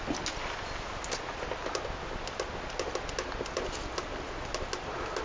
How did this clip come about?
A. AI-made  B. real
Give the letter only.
B